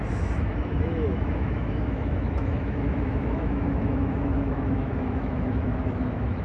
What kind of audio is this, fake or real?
fake